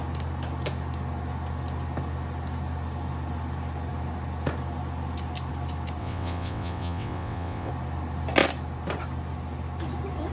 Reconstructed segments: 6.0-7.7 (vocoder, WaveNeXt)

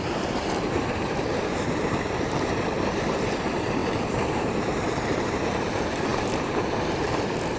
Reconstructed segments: 0.0-7.6 (vocoder, BigVGAN v2)

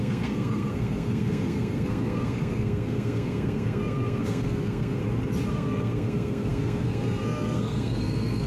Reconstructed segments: 0.0-5.0 (codec, SNAC); 5.5-8.5

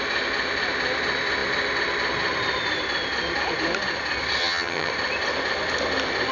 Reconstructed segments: 4.4-4.9 (vocoder, HiFi-GAN)

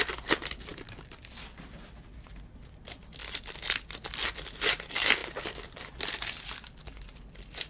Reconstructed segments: 5.2-6.8 (vocoder, BigVGAN v2)

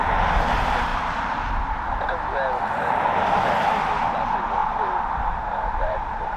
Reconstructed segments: 4.6-6.4 (vocoder, BigVGAN v2)

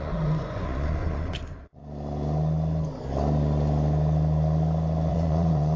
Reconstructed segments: 0.0-1.8 (vocoder, Vocos); 5.1-5.8